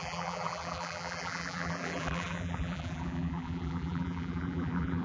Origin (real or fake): fake